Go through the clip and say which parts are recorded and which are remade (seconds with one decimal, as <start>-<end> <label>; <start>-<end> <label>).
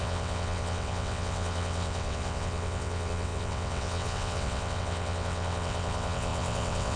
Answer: 0.0-7.0 remade